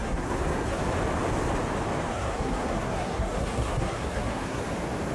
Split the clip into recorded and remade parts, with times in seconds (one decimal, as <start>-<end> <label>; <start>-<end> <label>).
0.0-0.8 remade; 0.8-2.1 recorded; 2.1-4.6 remade; 4.6-5.1 recorded